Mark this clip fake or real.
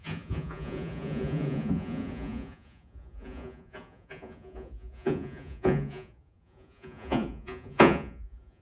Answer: fake